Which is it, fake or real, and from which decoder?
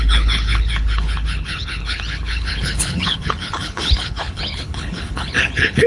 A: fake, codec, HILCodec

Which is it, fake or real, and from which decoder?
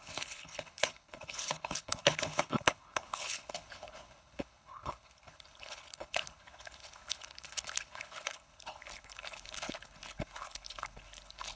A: fake, codec, HILCodec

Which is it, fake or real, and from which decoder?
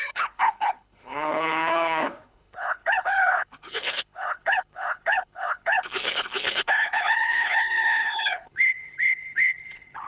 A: fake, codec, HILCodec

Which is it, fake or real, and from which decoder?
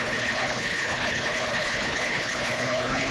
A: fake, codec, HILCodec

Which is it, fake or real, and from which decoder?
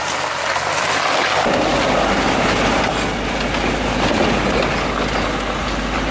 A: real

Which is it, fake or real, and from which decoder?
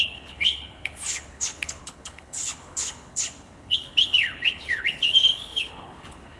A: fake, codec, HILCodec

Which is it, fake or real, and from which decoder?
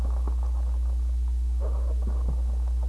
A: real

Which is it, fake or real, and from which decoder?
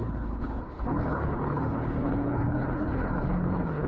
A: fake, codec, HILCodec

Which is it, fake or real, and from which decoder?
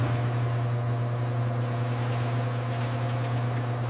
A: real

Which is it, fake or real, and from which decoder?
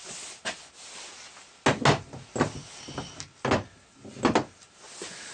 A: real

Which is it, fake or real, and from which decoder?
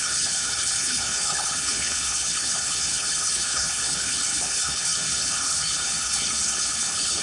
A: fake, codec, HILCodec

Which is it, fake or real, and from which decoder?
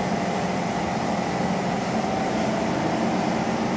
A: real